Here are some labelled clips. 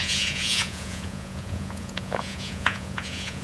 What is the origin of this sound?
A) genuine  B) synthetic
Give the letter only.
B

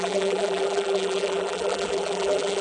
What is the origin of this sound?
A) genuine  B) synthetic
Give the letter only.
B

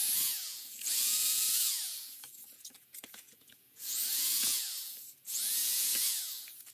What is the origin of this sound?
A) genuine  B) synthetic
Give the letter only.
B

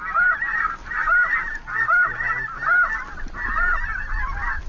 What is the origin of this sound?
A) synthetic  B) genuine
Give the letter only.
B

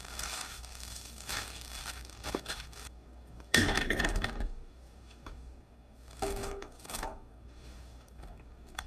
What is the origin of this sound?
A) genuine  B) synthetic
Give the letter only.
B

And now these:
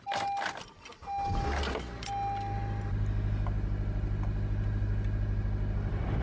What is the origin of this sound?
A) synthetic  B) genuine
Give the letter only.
B